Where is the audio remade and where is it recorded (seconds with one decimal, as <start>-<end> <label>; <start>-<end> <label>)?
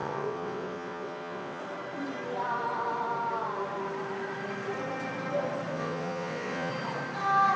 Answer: 0.0-1.6 remade; 1.6-5.7 recorded; 5.7-6.7 remade; 6.7-7.6 recorded